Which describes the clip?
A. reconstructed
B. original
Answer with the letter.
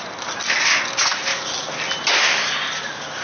B